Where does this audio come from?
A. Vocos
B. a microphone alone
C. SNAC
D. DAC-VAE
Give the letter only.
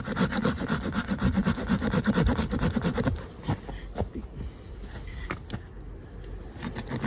B